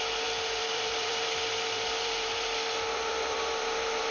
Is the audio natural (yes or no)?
no